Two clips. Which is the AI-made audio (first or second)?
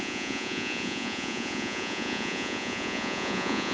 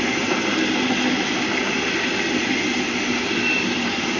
first